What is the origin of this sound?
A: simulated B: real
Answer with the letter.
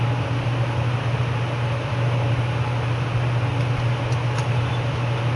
B